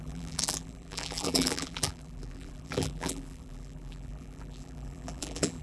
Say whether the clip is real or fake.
fake